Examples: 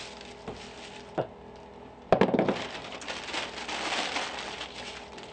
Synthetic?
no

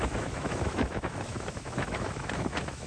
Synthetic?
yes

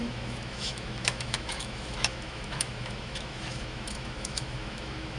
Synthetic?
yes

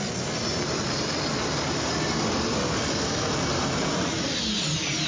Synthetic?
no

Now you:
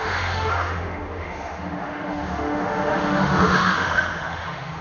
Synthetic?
yes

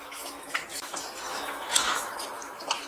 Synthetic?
yes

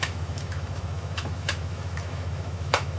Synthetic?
yes